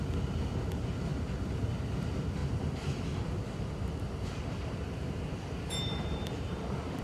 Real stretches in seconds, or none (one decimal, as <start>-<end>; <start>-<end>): 0.0-2.4; 6.3-7.0